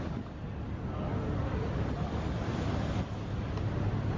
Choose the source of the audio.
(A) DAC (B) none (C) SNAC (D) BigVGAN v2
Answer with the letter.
B